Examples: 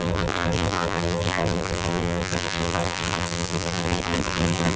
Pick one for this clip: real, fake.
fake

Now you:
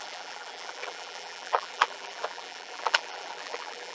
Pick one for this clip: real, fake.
fake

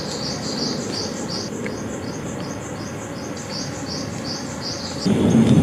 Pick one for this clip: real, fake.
real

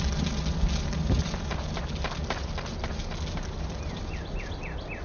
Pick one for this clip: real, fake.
real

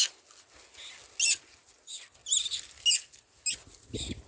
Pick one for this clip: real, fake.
real